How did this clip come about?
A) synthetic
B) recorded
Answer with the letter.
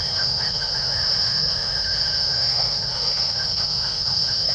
A